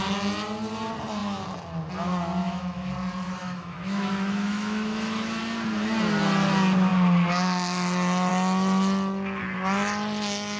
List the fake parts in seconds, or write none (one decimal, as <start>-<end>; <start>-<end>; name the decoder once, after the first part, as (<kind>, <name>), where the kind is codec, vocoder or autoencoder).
2.4-2.9 (autoencoder, DAC-VAE); 3.4-5.4

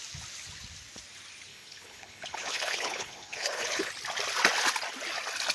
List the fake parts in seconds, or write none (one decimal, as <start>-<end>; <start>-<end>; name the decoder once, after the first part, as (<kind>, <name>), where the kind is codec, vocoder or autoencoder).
1.5-3.9 (codec, HILCodec)

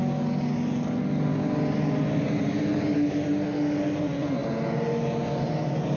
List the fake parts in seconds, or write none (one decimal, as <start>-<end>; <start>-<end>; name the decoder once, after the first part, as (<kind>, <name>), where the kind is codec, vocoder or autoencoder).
none

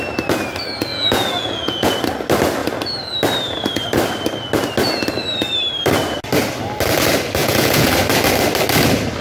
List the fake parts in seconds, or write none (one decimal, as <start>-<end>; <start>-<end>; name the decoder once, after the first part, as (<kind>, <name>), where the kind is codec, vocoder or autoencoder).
0.9-1.9 (vocoder, Vocos); 7.4-7.9